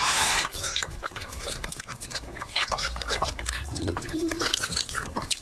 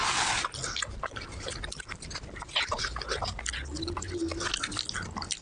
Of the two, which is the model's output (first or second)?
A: first